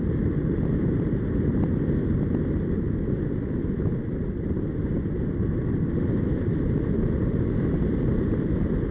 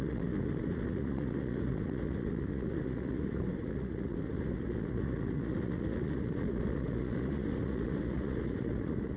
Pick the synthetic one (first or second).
second